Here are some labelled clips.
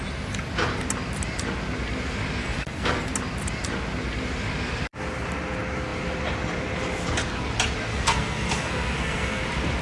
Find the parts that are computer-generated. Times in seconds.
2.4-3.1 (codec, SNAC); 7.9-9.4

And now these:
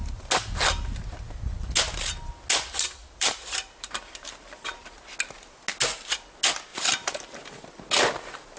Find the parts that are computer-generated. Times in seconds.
3.0-4.8 (vocoder, BigVGAN v2); 6.7-7.4

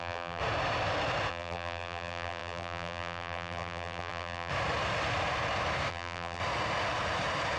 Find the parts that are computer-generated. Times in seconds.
0.0-0.4 (vocoder, BigVGAN v2); 1.3-4.5; 5.9-6.4

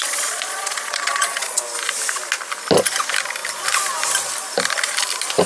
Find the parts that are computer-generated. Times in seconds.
0.0-1.6 (vocoder, Vocos)

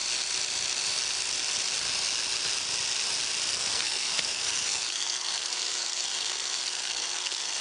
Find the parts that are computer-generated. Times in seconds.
3.5-7.6 (codec, SNAC)

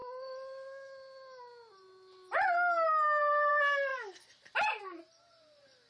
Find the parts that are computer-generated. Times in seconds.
none